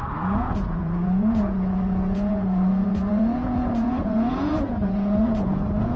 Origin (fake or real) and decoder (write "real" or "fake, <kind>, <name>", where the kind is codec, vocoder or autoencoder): fake, vocoder, Vocos